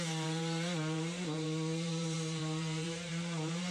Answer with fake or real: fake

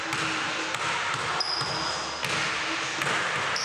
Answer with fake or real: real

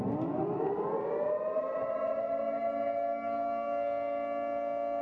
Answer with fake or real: real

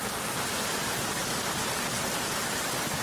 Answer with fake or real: real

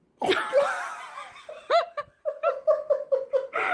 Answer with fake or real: real